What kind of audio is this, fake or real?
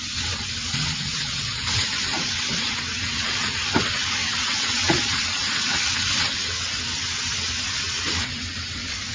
fake